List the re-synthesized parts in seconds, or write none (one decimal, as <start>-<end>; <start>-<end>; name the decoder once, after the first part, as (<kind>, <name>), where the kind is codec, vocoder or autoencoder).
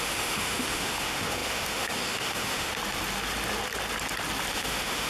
0.0-2.7 (autoencoder, DAC-VAE); 4.5-5.1